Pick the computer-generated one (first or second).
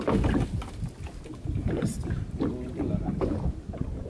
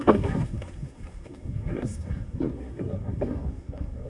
second